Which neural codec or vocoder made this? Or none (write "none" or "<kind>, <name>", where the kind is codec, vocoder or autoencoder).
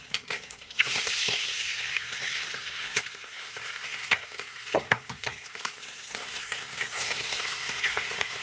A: codec, SNAC